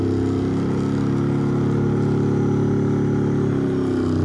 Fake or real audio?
real